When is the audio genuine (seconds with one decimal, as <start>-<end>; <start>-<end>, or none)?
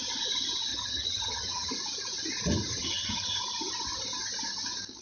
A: 0.0-0.7; 1.7-2.7; 3.4-5.0